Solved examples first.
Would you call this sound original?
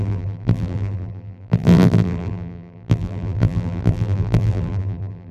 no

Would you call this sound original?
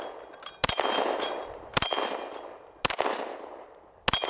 yes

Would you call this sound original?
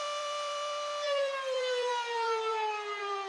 no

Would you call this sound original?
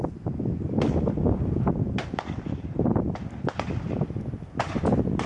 no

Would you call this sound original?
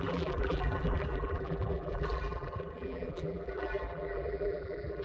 no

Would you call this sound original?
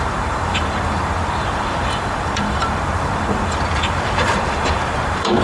no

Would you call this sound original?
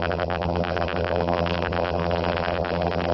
no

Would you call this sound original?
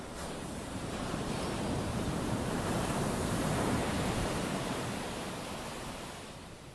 no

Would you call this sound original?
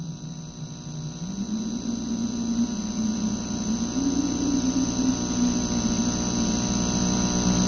yes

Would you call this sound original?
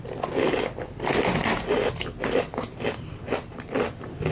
yes